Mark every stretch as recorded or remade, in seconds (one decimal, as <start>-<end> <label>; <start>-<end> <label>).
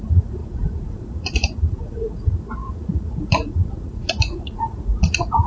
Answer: 0.0-5.5 remade